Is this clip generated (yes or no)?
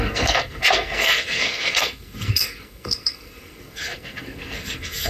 yes